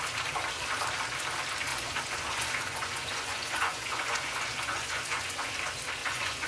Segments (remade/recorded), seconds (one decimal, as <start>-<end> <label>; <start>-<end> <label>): 0.0-1.7 recorded; 1.7-5.5 remade; 5.5-6.0 recorded; 6.0-6.5 remade